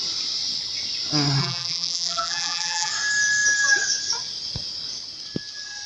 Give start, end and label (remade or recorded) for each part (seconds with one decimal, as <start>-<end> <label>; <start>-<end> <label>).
0.0-1.4 recorded; 1.4-2.9 remade; 2.9-5.9 recorded